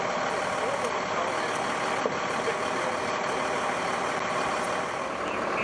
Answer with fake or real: real